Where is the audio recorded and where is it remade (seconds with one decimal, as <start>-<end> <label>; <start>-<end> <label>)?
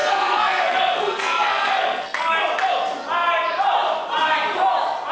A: 0.0-2.4 remade; 2.4-5.1 recorded